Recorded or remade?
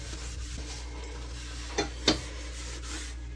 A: recorded